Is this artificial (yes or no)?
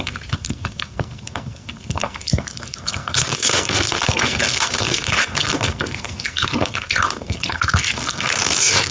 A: yes